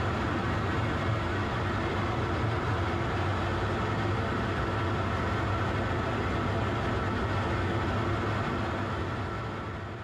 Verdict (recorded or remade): recorded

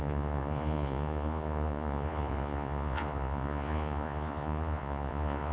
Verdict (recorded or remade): remade